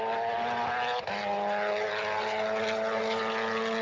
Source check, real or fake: real